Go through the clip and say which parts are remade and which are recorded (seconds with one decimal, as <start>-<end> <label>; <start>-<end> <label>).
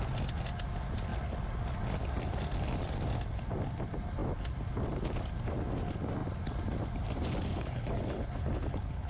0.0-7.5 recorded; 7.5-9.1 remade